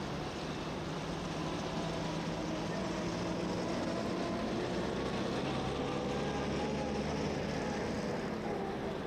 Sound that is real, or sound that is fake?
real